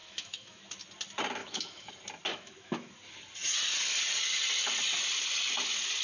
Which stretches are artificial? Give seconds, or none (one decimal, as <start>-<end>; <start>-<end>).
0.0-0.6; 1.4-1.9; 2.3-2.9